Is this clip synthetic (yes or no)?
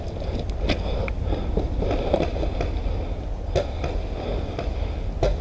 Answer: no